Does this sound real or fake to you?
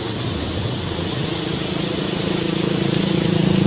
real